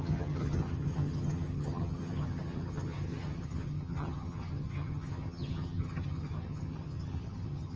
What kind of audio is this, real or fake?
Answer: fake